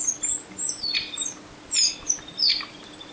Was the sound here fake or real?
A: real